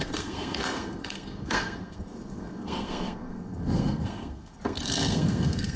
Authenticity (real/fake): fake